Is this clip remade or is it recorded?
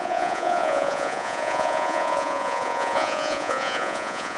remade